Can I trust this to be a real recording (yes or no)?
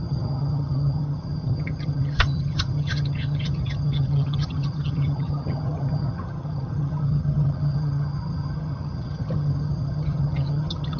no